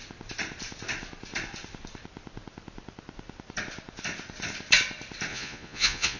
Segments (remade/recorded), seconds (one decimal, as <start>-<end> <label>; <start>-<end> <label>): 0.0-5.3 recorded; 5.3-6.2 remade